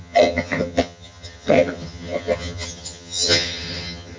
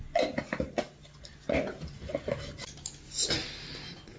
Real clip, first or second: second